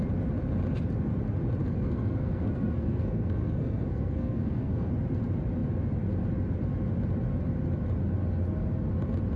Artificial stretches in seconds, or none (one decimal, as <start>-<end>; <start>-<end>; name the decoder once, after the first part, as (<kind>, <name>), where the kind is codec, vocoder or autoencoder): 1.6-4.9 (codec, SNAC)